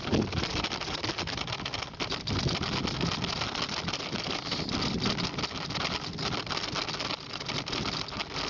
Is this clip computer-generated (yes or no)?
no